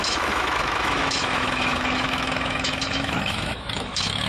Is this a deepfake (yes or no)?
yes